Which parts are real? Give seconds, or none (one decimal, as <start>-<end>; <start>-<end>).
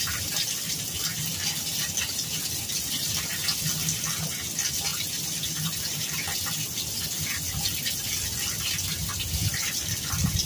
0.0-4.9; 5.8-9.4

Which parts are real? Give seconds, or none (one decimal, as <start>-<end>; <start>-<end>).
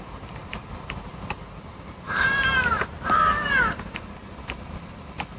4.2-5.4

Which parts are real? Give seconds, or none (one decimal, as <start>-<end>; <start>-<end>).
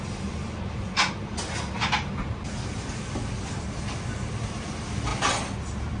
0.0-6.0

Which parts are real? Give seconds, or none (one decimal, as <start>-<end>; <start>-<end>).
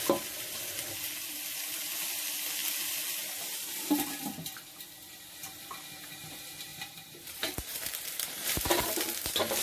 0.0-6.7; 9.0-9.6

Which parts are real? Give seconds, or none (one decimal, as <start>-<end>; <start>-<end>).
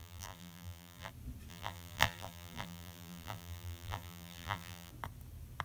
1.1-1.5; 4.9-5.6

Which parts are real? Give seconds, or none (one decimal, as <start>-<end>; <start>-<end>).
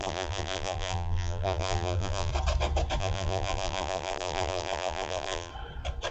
2.3-3.0; 5.5-6.1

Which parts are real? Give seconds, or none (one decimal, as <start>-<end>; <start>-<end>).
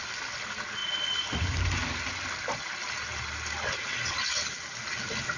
0.0-5.4